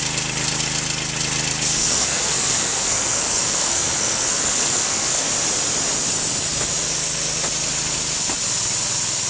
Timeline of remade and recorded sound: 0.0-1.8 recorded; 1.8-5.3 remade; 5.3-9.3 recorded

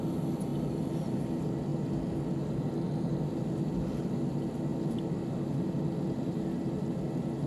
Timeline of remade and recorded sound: 0.0-7.5 recorded

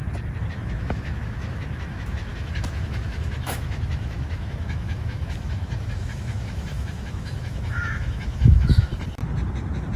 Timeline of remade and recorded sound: 0.0-0.5 recorded; 0.5-8.9 remade; 8.9-10.0 recorded

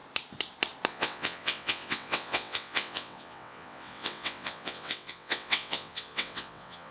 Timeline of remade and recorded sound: 0.0-0.9 recorded; 0.9-6.9 remade

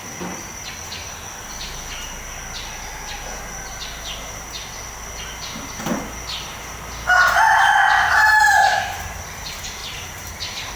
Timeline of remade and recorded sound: 0.0-9.8 recorded; 9.8-10.3 remade; 10.3-10.8 recorded

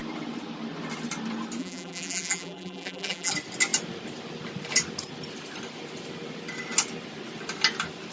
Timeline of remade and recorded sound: 0.0-1.6 recorded; 1.6-3.3 remade; 3.3-8.1 recorded

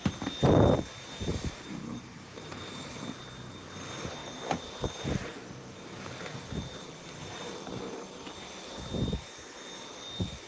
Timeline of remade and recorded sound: 0.0-1.3 recorded; 1.3-2.9 remade; 2.9-4.2 recorded; 4.2-7.7 remade; 7.7-10.5 recorded

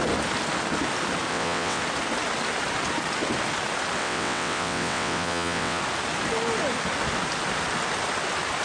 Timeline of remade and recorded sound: 0.0-1.3 recorded; 1.3-1.8 remade; 1.8-4.0 recorded; 4.0-5.8 remade; 5.8-8.6 recorded